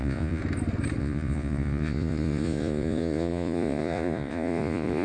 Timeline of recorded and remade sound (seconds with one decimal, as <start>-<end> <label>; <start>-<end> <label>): 0.0-0.4 remade; 0.4-1.0 recorded; 1.0-5.0 remade